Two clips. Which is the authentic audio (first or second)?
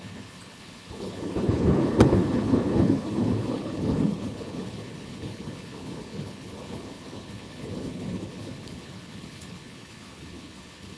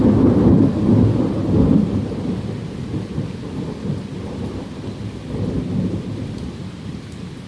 second